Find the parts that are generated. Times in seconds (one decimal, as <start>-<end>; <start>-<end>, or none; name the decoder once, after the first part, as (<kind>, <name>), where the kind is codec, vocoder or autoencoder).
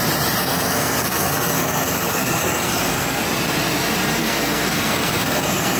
0.4-3.2 (codec, SNAC); 4.2-5.8